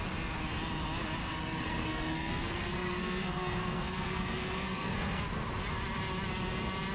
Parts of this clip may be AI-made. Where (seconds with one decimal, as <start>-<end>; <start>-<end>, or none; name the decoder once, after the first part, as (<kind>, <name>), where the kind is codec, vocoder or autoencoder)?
1.2-5.2 (codec, SNAC)